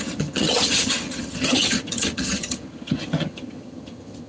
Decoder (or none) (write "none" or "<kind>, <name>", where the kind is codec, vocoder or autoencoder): vocoder, HiFi-GAN